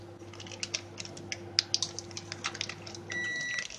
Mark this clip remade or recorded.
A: recorded